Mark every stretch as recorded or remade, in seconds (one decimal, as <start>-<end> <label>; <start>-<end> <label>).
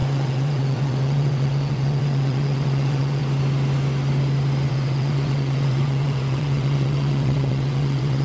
0.0-3.2 remade; 3.2-4.7 recorded; 4.7-8.2 remade